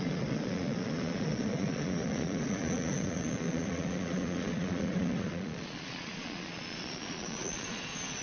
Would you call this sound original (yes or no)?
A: no